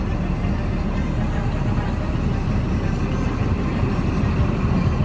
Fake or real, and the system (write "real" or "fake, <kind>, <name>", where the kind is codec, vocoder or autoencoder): real